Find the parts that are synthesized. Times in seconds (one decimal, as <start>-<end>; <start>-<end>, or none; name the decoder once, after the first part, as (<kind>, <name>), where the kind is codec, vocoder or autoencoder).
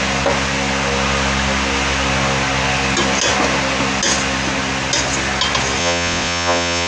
5.8-6.9 (vocoder, Vocos)